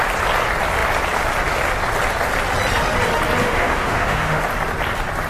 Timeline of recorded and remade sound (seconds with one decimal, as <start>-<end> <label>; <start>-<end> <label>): 0.0-3.4 recorded; 3.4-4.4 remade; 4.4-5.3 recorded